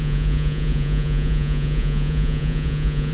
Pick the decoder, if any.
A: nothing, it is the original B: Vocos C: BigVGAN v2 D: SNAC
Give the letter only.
B